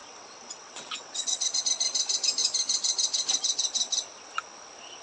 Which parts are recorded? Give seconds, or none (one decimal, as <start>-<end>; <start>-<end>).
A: 1.6-5.0